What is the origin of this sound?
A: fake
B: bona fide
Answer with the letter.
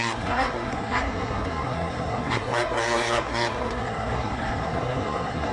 A